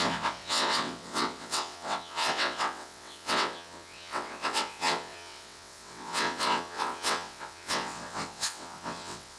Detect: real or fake fake